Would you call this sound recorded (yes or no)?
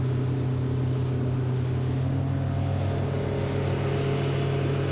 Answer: yes